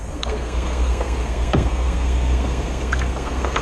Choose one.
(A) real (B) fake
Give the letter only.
B